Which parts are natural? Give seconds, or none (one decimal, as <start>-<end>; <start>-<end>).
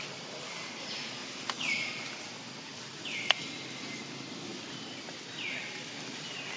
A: 0.0-6.6